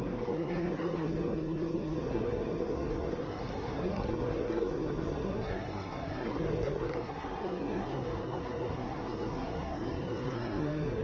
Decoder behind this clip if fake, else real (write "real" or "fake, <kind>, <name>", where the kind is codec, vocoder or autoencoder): fake, codec, SNAC